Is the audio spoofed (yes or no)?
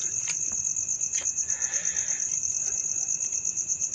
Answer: no